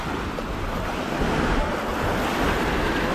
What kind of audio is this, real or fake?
real